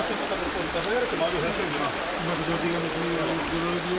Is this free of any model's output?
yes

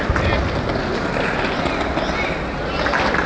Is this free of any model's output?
yes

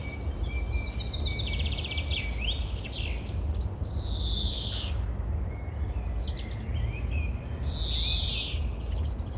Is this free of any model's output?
yes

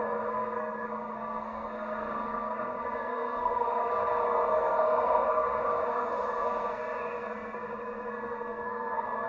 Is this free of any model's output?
no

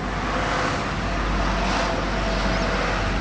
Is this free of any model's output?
yes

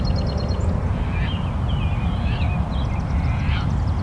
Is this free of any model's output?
yes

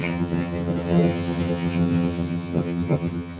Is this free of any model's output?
no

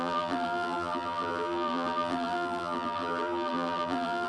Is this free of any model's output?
no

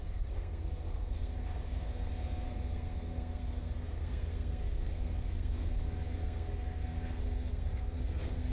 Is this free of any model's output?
no